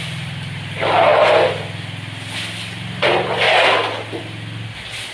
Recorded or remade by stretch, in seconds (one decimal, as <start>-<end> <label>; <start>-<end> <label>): 0.0-5.1 recorded